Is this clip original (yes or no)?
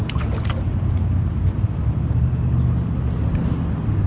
yes